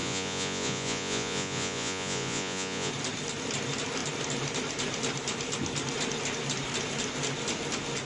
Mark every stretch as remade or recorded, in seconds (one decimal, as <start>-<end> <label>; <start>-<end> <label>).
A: 0.0-2.9 remade; 2.9-8.1 recorded